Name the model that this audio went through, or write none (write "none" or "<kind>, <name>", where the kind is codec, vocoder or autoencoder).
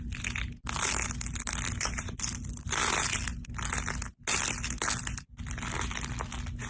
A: none